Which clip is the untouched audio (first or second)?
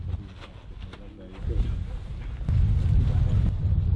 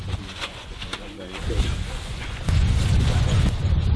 first